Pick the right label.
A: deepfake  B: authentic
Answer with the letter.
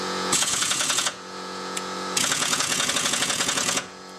A